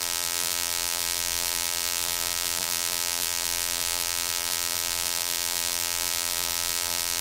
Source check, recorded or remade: remade